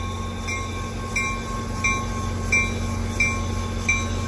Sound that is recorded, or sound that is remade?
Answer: recorded